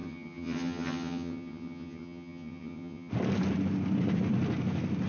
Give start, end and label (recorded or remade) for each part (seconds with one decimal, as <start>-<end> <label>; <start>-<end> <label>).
0.0-3.1 remade; 3.1-5.1 recorded